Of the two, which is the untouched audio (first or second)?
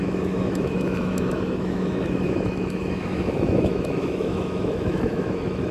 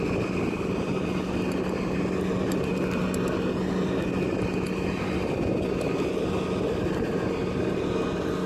second